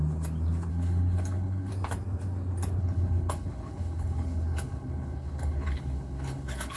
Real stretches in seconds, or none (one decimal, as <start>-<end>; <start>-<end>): 0.0-0.7; 1.7-2.8